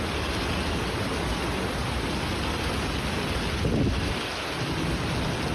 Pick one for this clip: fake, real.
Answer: real